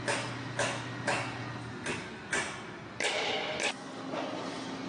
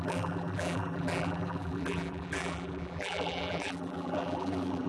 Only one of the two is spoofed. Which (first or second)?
second